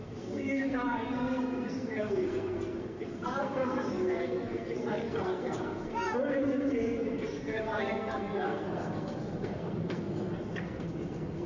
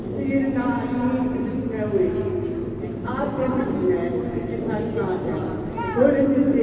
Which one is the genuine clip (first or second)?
second